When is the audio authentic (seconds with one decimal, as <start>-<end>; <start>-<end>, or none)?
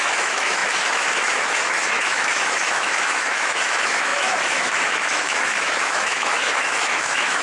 none